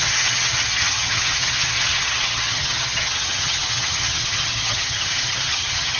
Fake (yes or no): yes